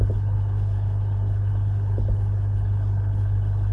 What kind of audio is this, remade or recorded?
remade